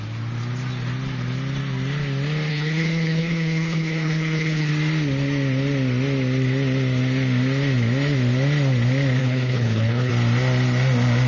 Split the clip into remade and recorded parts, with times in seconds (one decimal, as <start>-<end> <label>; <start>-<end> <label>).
0.0-2.5 recorded; 2.5-4.7 remade; 4.7-9.2 recorded; 9.2-10.1 remade; 10.1-11.3 recorded